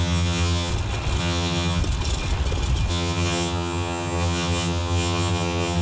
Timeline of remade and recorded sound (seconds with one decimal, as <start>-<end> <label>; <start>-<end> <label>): 0.0-0.7 remade; 0.7-1.2 recorded; 1.2-1.8 remade; 1.8-2.9 recorded; 2.9-5.8 remade